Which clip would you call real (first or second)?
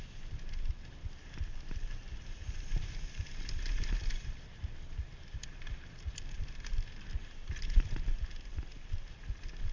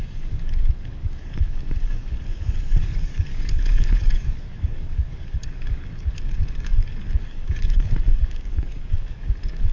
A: first